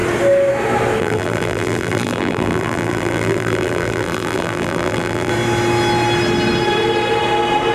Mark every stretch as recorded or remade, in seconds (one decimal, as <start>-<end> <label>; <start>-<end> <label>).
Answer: 0.0-1.0 recorded; 1.0-5.3 remade; 5.3-7.7 recorded